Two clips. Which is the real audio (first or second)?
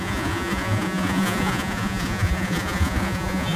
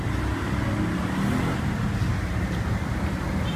second